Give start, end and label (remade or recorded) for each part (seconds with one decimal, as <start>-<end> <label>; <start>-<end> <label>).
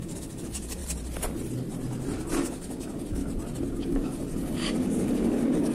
0.0-0.8 remade; 0.8-2.4 recorded; 2.4-3.2 remade; 3.2-3.8 recorded; 3.8-5.7 remade